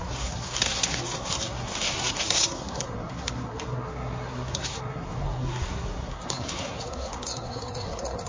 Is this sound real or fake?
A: fake